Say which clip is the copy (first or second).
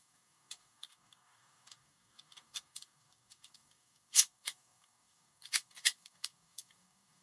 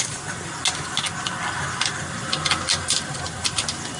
first